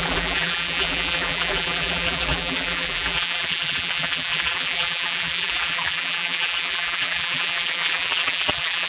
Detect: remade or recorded remade